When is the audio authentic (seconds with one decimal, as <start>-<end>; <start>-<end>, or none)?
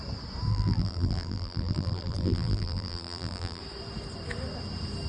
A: 0.0-0.5; 3.6-5.1